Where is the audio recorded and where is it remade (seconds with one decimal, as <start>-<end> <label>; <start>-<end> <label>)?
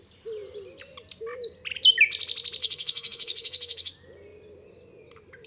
0.0-2.6 recorded; 2.6-3.9 remade; 3.9-5.5 recorded